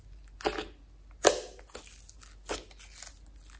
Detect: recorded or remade recorded